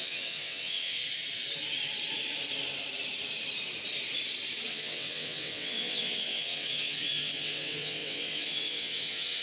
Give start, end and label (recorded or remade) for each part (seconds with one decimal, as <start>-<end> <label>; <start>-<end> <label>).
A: 0.0-1.0 remade; 1.0-4.7 recorded; 4.7-9.4 remade